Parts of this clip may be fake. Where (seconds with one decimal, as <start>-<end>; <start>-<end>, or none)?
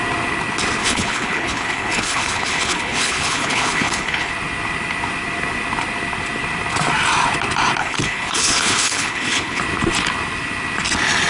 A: 0.8-4.3; 7.8-9.6